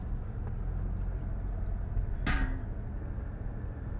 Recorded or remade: recorded